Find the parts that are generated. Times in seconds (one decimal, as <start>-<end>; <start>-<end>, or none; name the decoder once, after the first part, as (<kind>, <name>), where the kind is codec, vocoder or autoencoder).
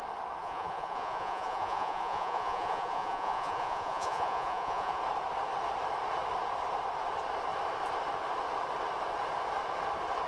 0.4-5.0 (vocoder, Vocos)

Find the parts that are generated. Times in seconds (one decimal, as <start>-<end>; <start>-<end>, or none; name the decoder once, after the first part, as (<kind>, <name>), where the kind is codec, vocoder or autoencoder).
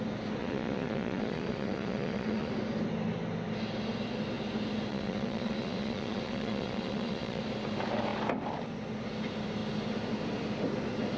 0.4-2.5 (vocoder, Vocos); 4.9-7.4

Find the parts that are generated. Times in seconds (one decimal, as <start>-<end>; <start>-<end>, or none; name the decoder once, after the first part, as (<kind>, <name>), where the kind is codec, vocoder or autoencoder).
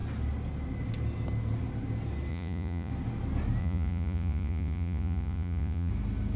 2.3-2.9 (vocoder, Vocos); 3.6-5.9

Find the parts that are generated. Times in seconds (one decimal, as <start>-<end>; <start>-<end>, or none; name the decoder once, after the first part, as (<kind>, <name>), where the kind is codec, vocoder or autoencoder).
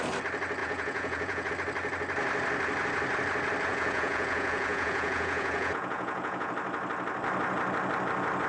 0.6-1.5 (vocoder, Vocos); 3.7-6.5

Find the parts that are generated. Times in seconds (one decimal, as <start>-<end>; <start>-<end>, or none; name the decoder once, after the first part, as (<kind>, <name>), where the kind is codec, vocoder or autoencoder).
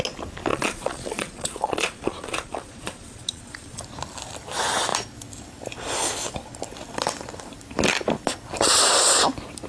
0.5-3.8 (vocoder, Vocos)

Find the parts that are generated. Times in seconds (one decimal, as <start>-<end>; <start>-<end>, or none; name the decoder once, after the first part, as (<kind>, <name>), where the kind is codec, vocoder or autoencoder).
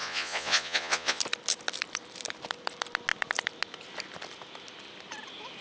0.0-1.2 (vocoder, Vocos)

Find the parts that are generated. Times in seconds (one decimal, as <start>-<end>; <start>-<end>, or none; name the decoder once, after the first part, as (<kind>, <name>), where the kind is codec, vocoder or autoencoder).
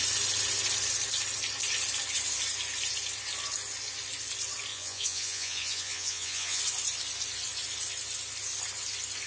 4.7-6.6 (vocoder, Vocos)